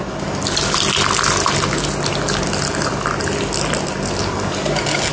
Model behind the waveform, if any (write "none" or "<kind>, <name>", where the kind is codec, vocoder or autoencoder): none